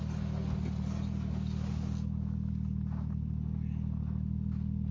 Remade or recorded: recorded